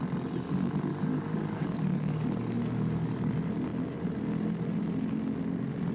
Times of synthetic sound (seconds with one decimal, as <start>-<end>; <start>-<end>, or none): 0.9-3.3